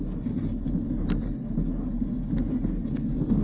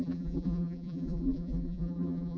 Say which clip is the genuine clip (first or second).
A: first